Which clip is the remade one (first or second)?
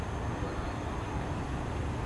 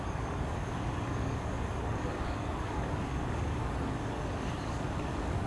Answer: second